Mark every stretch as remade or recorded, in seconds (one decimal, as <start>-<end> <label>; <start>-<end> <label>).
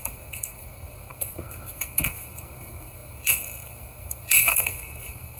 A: 0.0-5.4 remade